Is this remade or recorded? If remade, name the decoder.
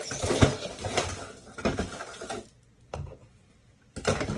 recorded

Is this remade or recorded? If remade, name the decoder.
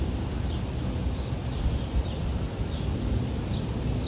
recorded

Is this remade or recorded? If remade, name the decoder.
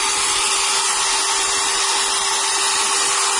recorded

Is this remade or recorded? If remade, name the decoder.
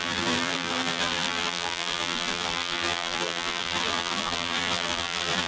remade, vocoder, BigVGAN v2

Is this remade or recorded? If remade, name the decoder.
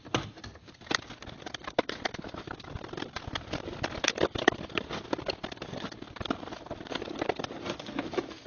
recorded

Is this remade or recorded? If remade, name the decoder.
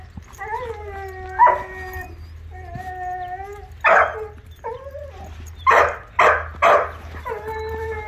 recorded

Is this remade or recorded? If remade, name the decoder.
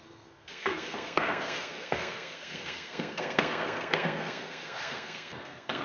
remade, codec, SNAC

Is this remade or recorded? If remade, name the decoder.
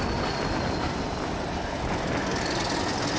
recorded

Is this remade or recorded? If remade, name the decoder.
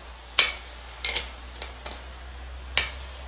recorded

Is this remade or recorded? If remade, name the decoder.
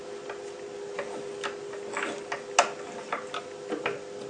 recorded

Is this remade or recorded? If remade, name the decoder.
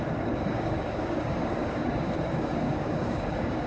remade, codec, DAC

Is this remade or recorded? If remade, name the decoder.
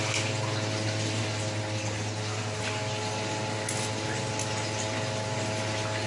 recorded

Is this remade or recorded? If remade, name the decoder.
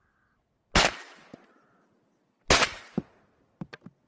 recorded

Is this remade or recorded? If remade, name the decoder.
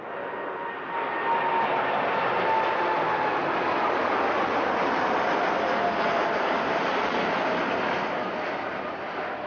recorded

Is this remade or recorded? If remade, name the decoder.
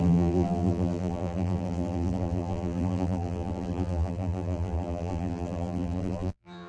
remade, vocoder, BigVGAN v2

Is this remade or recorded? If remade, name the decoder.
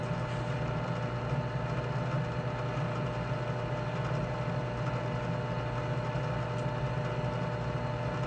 recorded